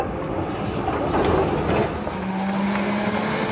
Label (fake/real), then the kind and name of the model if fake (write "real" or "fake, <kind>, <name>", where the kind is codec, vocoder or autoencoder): real